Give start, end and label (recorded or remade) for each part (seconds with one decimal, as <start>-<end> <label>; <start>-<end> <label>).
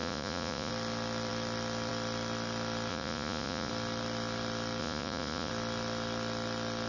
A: 0.0-0.7 remade; 0.7-2.9 recorded; 2.9-3.7 remade; 3.7-4.8 recorded; 4.8-5.5 remade; 5.5-6.9 recorded